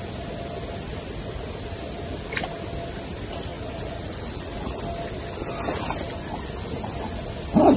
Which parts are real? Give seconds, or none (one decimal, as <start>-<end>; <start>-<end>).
0.0-3.5; 4.8-7.8